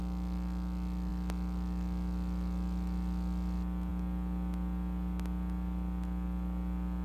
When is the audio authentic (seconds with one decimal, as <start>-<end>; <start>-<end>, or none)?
0.0-7.0